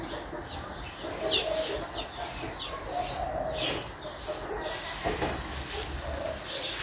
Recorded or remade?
recorded